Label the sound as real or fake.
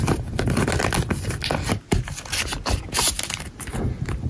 real